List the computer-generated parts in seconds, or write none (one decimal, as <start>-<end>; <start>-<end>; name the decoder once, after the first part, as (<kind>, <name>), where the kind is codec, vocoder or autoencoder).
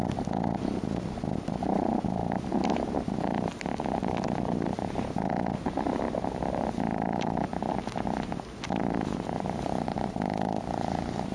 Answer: none